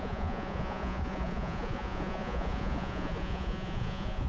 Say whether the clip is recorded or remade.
remade